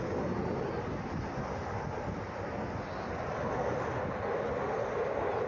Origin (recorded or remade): recorded